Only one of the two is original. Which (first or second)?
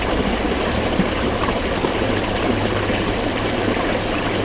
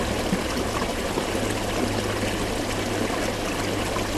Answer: second